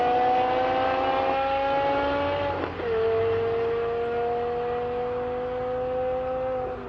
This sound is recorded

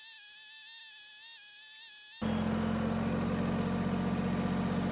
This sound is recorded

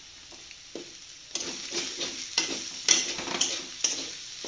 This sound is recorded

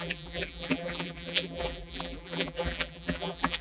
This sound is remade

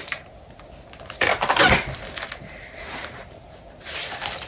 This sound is recorded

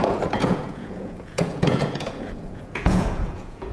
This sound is remade